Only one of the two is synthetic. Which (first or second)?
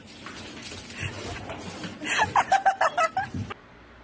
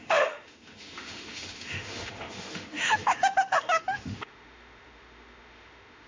second